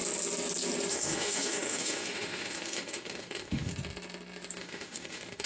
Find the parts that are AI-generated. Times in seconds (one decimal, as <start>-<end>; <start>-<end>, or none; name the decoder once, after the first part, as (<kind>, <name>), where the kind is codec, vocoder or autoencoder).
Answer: 0.9-3.7 (autoencoder, DAC-VAE); 4.6-5.5